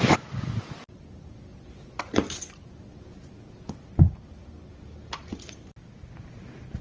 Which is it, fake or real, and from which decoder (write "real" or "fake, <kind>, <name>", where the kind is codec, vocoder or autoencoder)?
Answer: real